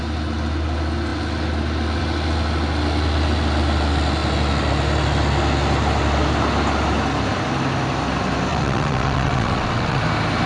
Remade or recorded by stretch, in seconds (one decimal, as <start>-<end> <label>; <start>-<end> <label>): 0.0-8.5 recorded; 8.5-10.0 remade; 10.0-10.5 recorded